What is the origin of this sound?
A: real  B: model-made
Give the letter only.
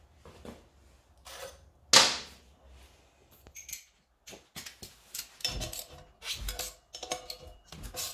A